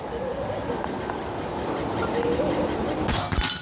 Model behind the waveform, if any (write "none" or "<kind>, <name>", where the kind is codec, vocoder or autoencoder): none